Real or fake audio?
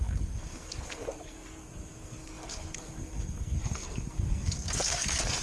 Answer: fake